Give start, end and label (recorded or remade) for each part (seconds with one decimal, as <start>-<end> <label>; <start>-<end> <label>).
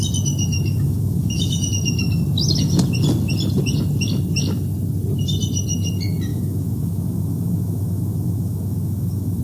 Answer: 0.0-0.7 recorded; 0.7-1.7 remade; 1.7-6.3 recorded; 6.3-9.4 remade